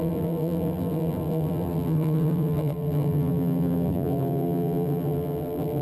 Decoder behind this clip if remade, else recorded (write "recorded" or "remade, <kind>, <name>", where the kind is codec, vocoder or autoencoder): remade, vocoder, BigVGAN v2